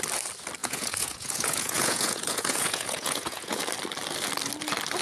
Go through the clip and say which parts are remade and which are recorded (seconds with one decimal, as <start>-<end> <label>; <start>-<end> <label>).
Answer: 0.0-0.6 recorded; 0.6-3.6 remade; 3.6-5.0 recorded